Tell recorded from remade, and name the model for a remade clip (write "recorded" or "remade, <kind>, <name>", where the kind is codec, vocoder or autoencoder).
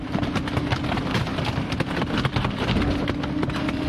recorded